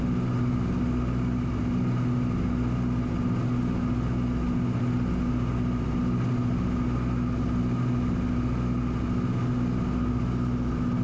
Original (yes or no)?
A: yes